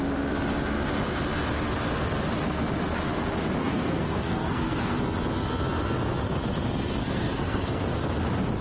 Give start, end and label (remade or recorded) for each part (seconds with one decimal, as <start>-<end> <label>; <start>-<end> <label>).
0.0-3.6 recorded; 3.6-5.0 remade; 5.0-7.0 recorded; 7.0-7.8 remade; 7.8-8.6 recorded